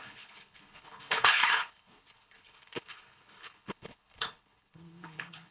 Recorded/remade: remade